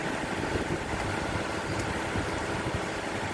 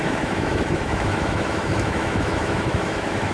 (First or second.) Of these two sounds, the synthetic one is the second